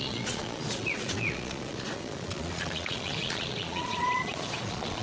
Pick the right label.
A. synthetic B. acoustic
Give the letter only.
A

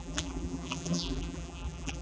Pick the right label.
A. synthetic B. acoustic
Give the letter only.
A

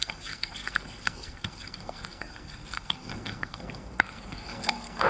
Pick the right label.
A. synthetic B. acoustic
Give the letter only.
A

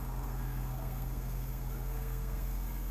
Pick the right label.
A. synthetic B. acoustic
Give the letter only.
A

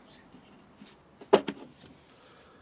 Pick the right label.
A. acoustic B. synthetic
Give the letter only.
A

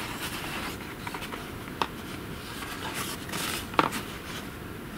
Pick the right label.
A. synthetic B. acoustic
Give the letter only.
B